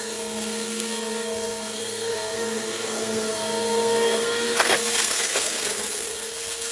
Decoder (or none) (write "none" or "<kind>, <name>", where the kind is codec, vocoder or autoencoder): codec, SNAC